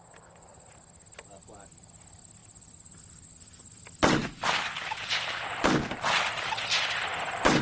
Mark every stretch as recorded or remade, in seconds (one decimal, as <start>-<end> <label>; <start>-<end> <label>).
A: 0.0-7.6 recorded